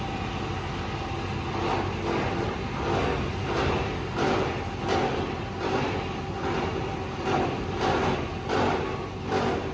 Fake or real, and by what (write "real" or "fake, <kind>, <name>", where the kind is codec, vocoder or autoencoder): real